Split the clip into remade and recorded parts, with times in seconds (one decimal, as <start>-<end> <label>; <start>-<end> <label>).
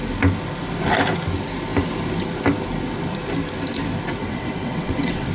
0.0-4.2 recorded; 4.2-5.3 remade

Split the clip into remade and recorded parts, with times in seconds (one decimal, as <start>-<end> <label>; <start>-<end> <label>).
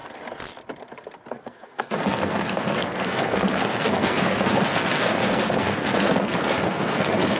0.0-1.3 recorded; 1.3-7.4 remade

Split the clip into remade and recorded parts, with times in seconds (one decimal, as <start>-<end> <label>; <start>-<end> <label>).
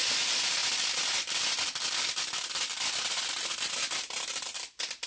0.0-5.1 recorded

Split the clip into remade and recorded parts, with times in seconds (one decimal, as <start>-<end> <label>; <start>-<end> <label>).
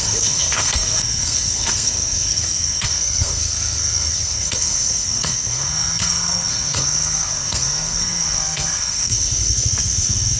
0.0-10.4 remade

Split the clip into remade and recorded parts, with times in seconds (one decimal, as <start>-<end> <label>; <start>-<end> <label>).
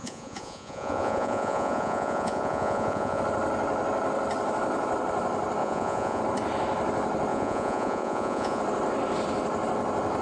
0.0-3.2 remade; 3.2-5.6 recorded; 5.6-6.2 remade; 6.2-7.3 recorded; 7.3-8.6 remade; 8.6-10.2 recorded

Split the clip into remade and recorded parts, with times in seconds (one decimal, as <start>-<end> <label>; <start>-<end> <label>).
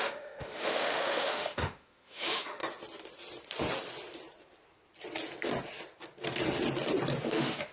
0.0-2.6 remade; 2.6-7.2 recorded; 7.2-7.7 remade